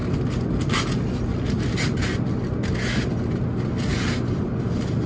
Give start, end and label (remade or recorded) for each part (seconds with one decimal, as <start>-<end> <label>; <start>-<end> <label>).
0.0-3.9 recorded; 3.9-5.1 remade

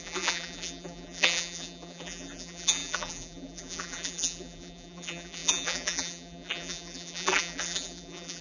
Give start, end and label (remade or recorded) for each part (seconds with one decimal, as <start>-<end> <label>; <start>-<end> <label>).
0.0-8.4 remade

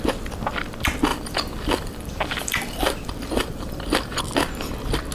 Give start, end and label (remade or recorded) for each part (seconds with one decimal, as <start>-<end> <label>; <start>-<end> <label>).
0.0-1.1 recorded; 1.1-4.2 remade; 4.2-5.1 recorded

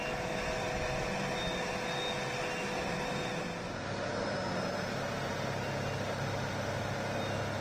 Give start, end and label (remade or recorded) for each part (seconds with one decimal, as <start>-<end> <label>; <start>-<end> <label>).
0.0-7.6 recorded

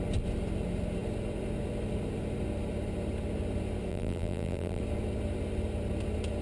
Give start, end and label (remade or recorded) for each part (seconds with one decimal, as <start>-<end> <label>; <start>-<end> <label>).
0.0-3.9 recorded; 3.9-4.8 remade; 4.8-6.4 recorded

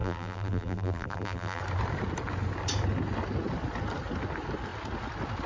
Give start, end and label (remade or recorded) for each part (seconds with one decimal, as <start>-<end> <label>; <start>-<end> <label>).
0.0-1.6 remade; 1.6-5.5 recorded

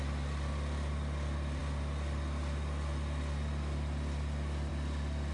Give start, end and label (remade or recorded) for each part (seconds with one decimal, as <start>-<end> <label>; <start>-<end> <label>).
0.0-5.3 recorded

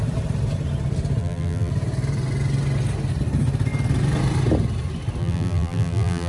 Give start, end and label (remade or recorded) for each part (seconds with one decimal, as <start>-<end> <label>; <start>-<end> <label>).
0.0-1.2 recorded; 1.2-1.7 remade; 1.7-5.2 recorded; 5.2-6.3 remade